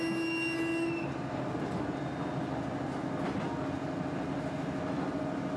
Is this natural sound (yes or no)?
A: yes